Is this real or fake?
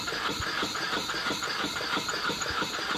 real